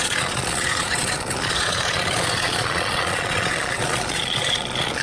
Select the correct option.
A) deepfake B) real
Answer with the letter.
A